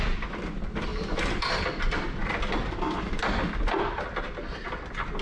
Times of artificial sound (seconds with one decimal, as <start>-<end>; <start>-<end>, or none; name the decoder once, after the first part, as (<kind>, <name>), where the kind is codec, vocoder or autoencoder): none